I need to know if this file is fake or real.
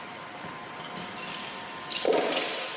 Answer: real